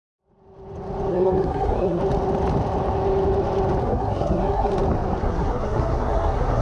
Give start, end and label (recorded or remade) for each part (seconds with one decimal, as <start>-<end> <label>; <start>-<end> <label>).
0.0-1.1 recorded; 1.1-2.0 remade; 2.0-3.8 recorded; 3.8-4.7 remade; 4.7-5.2 recorded; 5.2-6.6 remade